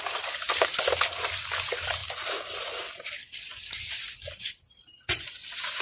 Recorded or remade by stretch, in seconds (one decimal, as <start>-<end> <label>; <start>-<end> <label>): 0.0-5.8 recorded